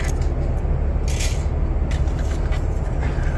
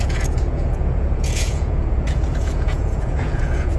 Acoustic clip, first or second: first